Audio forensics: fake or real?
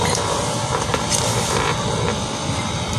fake